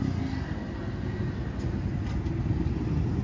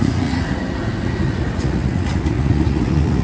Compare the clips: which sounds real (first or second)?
first